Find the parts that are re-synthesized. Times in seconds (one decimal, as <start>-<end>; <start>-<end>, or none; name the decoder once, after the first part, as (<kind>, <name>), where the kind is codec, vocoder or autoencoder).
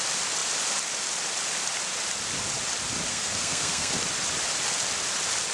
3.1-3.9 (codec, SNAC)